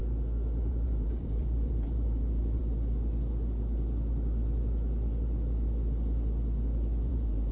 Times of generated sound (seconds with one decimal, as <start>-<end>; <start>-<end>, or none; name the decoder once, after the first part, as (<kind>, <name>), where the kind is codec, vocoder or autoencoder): 0.6-2.6 (vocoder, BigVGAN v2); 7.1-7.5